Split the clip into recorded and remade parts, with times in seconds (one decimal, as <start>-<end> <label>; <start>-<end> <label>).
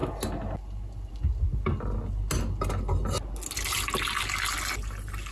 0.0-5.3 recorded